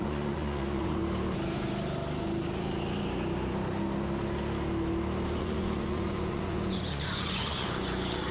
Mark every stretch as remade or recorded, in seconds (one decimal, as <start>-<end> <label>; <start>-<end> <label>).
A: 0.0-1.0 remade; 1.0-5.4 recorded; 5.4-8.3 remade